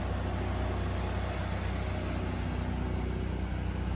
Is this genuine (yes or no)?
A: yes